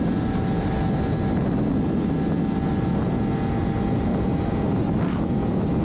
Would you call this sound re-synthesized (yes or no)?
no